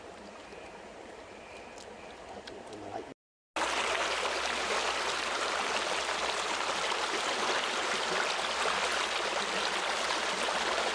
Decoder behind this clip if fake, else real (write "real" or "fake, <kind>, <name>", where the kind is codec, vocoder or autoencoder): real